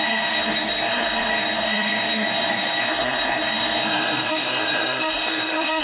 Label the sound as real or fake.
fake